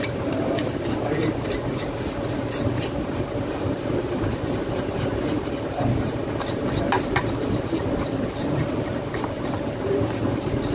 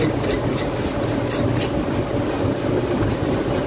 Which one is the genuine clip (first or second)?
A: second